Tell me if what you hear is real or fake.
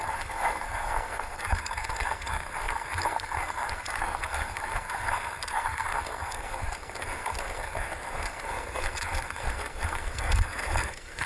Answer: fake